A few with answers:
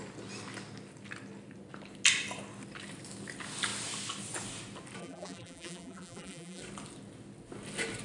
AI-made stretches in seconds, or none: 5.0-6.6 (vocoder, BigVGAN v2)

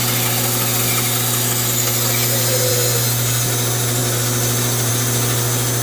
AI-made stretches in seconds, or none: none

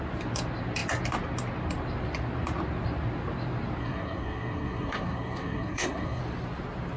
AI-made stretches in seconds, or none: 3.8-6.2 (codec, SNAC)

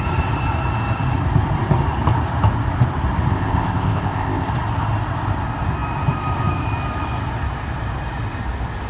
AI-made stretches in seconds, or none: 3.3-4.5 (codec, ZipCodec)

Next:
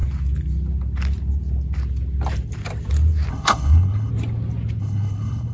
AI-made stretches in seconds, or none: 3.3-4.1 (codec, HILCodec); 4.8-5.5